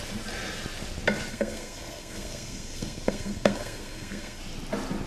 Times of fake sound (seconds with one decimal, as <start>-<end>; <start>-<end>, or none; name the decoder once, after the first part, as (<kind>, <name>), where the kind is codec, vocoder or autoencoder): 1.3-4.4 (codec, SNAC)